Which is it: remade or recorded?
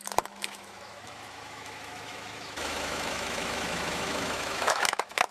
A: remade